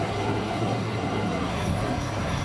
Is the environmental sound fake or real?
fake